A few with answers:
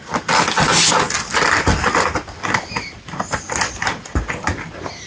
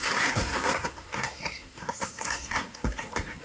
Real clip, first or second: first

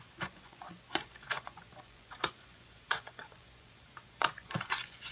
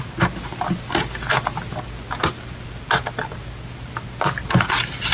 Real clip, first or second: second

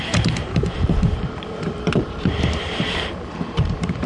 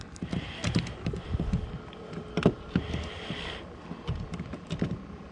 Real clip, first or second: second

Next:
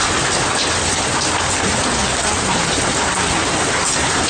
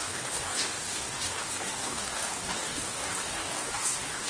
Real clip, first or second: first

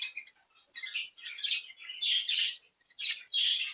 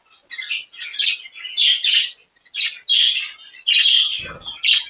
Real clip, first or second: second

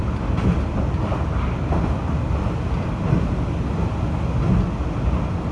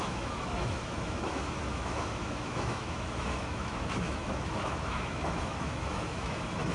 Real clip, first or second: first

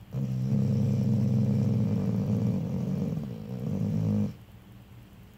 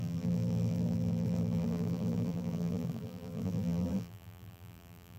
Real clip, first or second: first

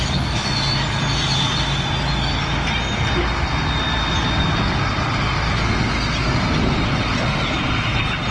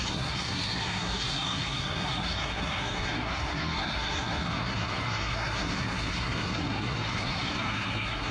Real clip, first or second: first